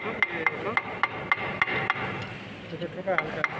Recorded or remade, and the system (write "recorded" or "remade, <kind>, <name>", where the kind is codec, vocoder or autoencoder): recorded